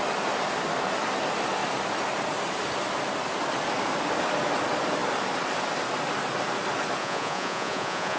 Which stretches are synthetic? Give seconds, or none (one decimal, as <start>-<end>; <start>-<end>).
7.0-8.2